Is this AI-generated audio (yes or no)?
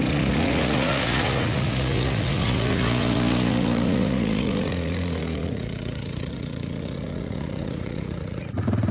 yes